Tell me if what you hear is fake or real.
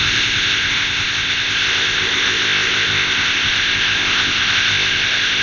fake